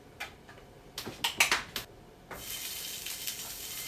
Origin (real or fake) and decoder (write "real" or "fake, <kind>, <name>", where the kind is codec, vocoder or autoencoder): real